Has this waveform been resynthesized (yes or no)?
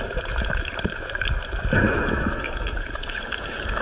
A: yes